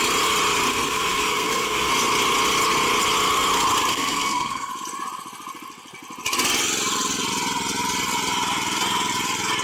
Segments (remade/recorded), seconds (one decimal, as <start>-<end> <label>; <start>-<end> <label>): 0.0-0.7 recorded; 0.7-1.9 remade; 1.9-3.9 recorded; 3.9-4.7 remade; 4.7-9.6 recorded